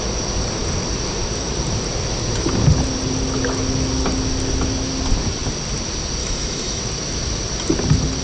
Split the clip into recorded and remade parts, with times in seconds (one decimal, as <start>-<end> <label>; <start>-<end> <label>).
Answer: 0.0-6.2 recorded; 6.2-6.8 remade; 6.8-8.2 recorded